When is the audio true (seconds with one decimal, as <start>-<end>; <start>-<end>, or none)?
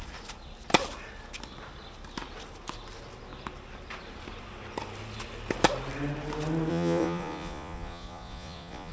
0.0-6.7